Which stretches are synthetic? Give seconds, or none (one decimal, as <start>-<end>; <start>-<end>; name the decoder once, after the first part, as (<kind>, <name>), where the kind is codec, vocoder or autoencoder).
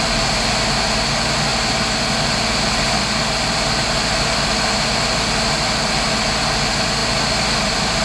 none